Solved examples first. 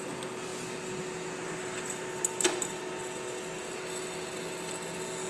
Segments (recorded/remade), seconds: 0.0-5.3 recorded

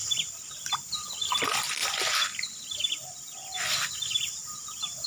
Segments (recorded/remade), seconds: 0.0-0.7 remade; 0.7-4.4 recorded; 4.4-5.1 remade

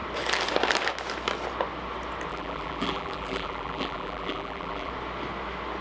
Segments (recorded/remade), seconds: 0.0-2.3 recorded; 2.3-4.9 remade; 4.9-5.8 recorded